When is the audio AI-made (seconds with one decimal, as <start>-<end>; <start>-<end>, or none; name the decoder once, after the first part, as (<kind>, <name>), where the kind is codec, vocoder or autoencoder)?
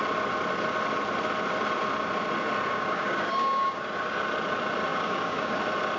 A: 2.7-3.8 (codec, DAC); 4.9-5.6